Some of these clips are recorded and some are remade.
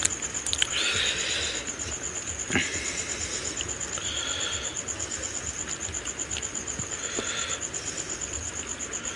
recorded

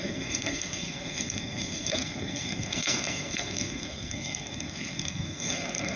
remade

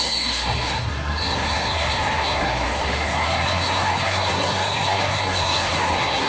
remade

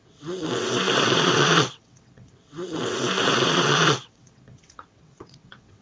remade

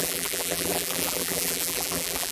remade